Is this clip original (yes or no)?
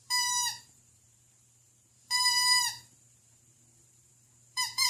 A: no